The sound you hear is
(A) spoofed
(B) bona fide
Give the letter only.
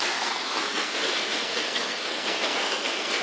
A